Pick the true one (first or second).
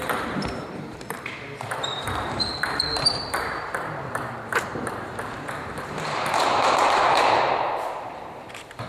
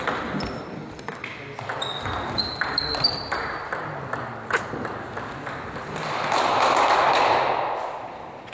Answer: second